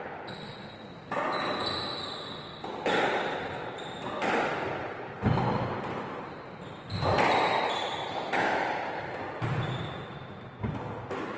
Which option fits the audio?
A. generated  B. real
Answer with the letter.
B